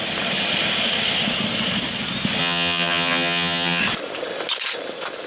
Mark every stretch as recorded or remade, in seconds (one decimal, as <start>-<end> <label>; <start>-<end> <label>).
0.0-2.4 recorded; 2.4-3.8 remade; 3.8-5.3 recorded